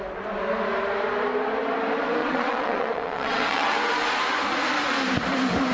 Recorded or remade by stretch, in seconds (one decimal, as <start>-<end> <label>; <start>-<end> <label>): 0.0-2.2 recorded; 2.2-3.9 remade; 3.9-5.7 recorded